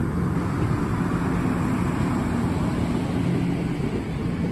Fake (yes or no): no